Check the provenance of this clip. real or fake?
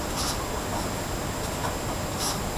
real